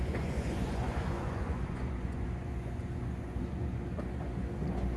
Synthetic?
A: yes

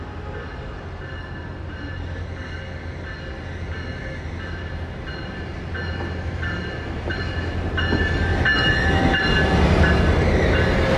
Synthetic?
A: no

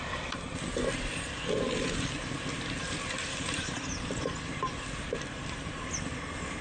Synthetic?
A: no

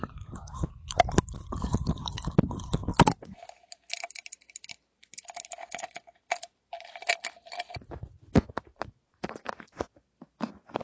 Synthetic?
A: no